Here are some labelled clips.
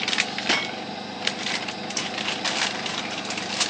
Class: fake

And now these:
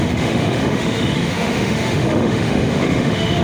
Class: fake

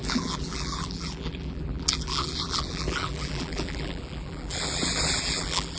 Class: fake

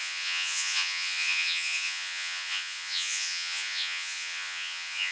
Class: fake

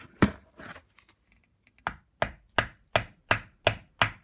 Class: real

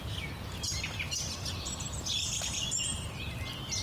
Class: real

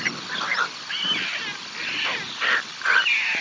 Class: real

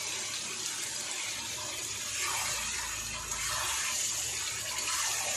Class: real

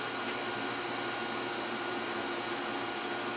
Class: real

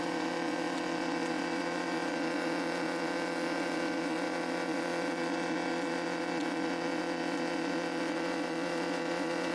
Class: fake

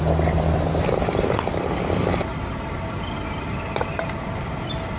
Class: real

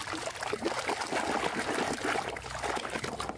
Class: real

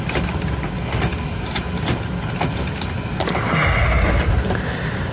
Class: real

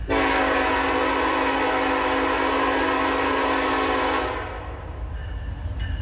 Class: real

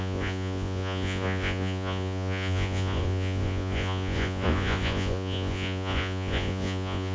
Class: fake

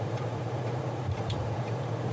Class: fake